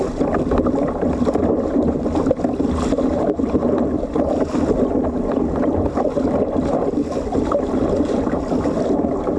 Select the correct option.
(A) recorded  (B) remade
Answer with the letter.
A